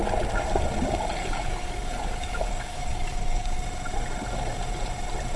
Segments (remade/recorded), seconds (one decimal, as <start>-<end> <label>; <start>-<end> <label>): 0.0-1.2 recorded; 1.2-3.6 remade; 3.6-5.4 recorded